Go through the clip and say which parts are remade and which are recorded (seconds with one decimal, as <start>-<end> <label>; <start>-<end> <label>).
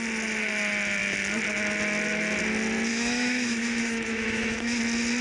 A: 0.0-2.9 recorded; 2.9-4.8 remade; 4.8-5.2 recorded